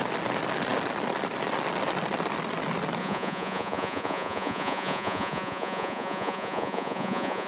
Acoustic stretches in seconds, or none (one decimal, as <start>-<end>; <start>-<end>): 0.0-3.0